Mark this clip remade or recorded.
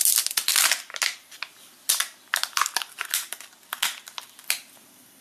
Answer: recorded